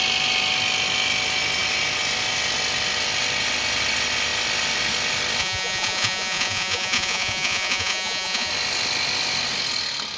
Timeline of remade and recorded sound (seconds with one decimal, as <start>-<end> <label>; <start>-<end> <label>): 0.0-5.4 recorded; 5.4-8.5 remade; 8.5-10.2 recorded